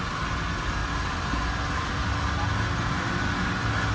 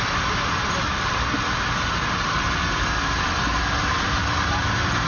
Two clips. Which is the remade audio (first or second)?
second